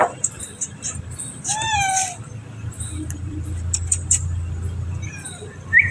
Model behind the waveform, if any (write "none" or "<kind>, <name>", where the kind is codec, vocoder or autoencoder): vocoder, BigVGAN v2